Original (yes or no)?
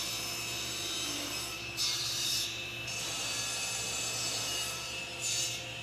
no